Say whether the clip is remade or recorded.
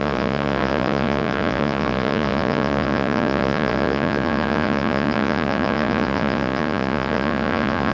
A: remade